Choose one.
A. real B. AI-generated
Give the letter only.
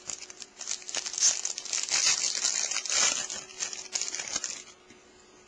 A